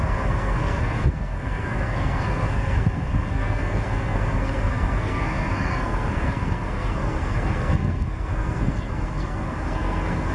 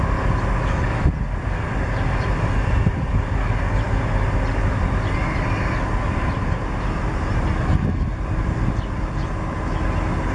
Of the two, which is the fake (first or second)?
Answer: first